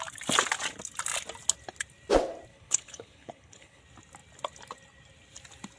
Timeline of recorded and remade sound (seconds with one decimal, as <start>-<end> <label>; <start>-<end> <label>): 0.0-2.5 recorded; 2.5-3.8 remade; 3.8-5.8 recorded

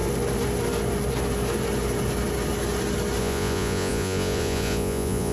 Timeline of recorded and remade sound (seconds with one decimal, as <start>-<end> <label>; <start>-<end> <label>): 0.0-3.2 recorded; 3.2-5.3 remade